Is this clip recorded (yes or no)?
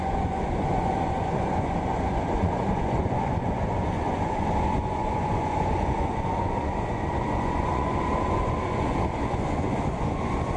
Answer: no